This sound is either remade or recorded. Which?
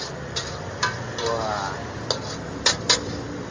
recorded